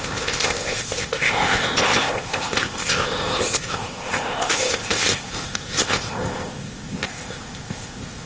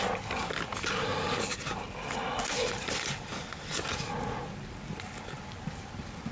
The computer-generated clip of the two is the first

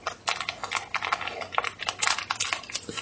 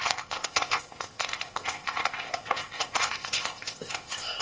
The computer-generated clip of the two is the second